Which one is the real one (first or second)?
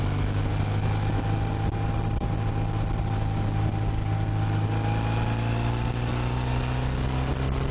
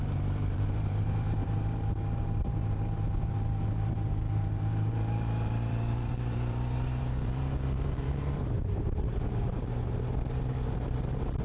first